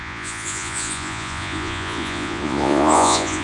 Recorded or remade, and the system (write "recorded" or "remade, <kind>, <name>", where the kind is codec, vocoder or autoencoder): remade, vocoder, Vocos